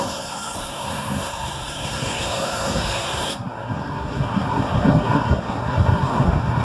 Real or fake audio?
fake